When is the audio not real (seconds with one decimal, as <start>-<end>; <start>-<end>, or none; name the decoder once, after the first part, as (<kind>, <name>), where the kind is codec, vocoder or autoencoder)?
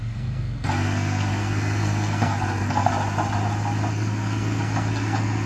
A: 0.0-2.9 (codec, SNAC); 3.9-5.5